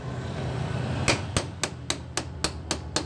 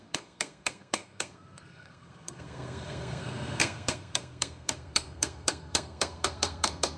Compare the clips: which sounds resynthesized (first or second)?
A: second